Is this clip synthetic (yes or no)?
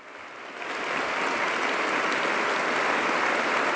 no